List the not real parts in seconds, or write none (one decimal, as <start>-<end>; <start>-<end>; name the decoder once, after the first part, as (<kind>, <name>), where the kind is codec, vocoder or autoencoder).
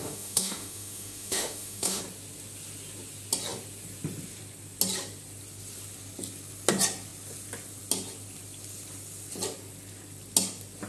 0.0-2.0 (autoencoder, DAC-VAE)